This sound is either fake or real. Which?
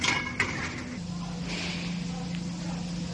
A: real